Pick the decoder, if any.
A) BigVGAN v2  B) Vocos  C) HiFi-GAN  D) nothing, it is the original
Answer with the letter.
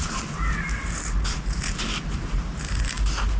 D